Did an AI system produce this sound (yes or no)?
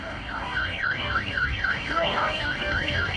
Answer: yes